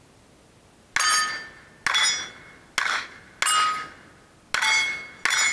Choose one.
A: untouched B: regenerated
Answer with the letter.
A